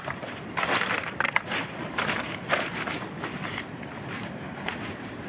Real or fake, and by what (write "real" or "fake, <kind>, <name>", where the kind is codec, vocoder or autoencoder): fake, vocoder, BigVGAN v2